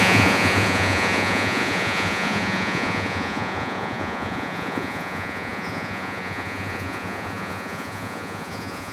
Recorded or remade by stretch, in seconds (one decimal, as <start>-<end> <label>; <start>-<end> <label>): 0.0-8.9 remade